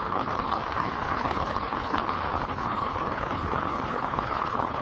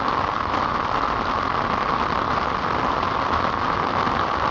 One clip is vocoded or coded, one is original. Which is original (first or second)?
second